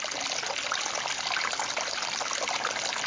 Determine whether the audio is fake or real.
real